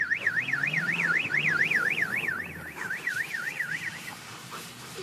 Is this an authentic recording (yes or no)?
no